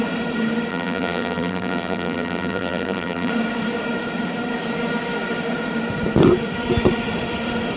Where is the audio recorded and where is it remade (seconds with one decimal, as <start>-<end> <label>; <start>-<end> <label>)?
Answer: 0.0-0.7 recorded; 0.7-3.3 remade; 3.3-7.8 recorded